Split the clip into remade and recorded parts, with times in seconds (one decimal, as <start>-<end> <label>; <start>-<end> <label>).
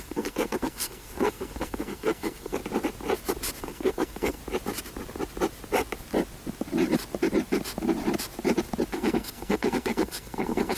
0.0-2.6 remade; 2.6-3.6 recorded; 3.6-4.4 remade; 4.4-8.9 recorded; 8.9-10.8 remade